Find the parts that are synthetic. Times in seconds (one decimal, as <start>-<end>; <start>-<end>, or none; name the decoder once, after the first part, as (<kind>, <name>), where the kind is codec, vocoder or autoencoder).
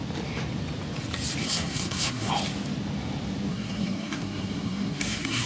1.4-2.3 (codec, SNAC); 3.5-5.5